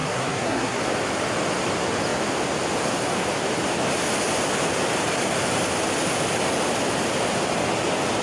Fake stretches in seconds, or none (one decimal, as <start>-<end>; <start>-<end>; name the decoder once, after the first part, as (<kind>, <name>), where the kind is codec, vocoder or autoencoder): 0.0-0.8 (codec, SNAC)